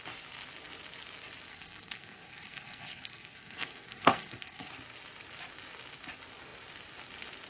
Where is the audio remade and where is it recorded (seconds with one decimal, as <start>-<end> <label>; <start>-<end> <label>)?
0.0-1.5 recorded; 1.5-4.7 remade; 4.7-7.5 recorded